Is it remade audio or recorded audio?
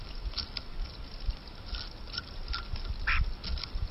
recorded